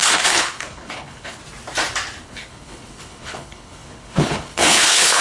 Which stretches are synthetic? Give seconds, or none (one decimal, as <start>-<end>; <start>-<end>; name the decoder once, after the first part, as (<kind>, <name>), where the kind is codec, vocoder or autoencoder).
0.0-1.4 (codec, HILCodec); 2.2-5.2

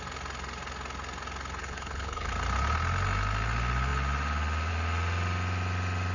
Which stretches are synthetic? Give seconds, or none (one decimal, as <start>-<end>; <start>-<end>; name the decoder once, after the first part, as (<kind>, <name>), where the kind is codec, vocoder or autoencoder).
1.6-2.3 (codec, HILCodec)